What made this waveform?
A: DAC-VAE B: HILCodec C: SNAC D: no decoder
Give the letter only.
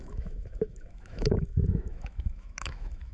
A